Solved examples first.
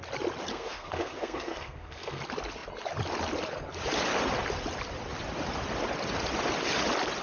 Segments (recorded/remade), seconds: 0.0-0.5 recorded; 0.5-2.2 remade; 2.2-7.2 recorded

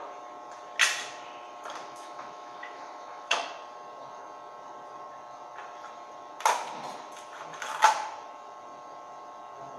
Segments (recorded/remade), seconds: 0.0-1.8 recorded; 1.8-3.5 remade; 3.5-9.8 recorded

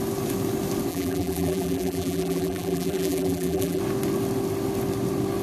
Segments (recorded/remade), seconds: 0.0-0.9 recorded; 0.9-3.8 remade; 3.8-5.4 recorded

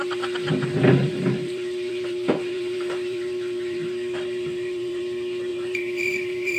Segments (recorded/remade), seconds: 0.0-1.0 recorded; 1.0-5.0 remade; 5.0-5.5 recorded; 5.5-6.6 remade

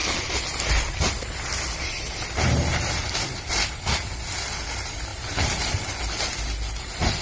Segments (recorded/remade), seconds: 0.0-7.2 recorded

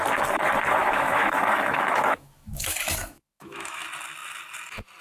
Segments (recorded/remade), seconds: 0.0-0.8 recorded; 0.8-3.8 remade; 3.8-5.0 recorded